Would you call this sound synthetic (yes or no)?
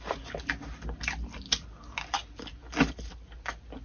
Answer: no